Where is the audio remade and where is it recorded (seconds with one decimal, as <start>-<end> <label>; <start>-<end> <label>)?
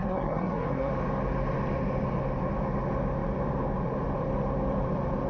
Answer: 0.0-0.9 remade; 0.9-5.3 recorded